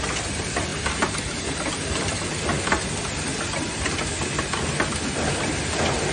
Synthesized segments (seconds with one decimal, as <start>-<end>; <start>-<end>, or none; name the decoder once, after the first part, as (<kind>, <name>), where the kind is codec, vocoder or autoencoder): none